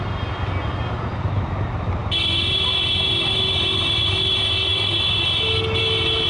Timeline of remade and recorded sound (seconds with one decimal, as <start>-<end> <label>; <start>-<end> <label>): 0.0-6.3 recorded